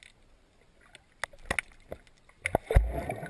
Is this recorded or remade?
recorded